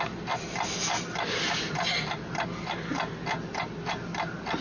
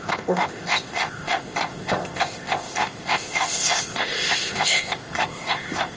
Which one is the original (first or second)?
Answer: first